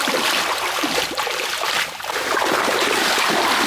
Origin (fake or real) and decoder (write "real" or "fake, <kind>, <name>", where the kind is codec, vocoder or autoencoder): fake, vocoder, BigVGAN v2